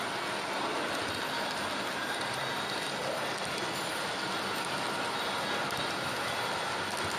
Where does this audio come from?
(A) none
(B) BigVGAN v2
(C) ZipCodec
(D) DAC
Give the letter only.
A